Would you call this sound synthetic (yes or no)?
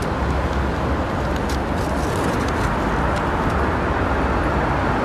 no